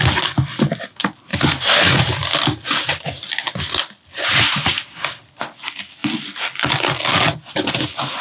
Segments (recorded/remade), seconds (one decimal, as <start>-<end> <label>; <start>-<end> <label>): 0.0-1.3 recorded; 1.3-5.3 remade; 5.3-6.0 recorded; 6.0-6.8 remade; 6.8-8.2 recorded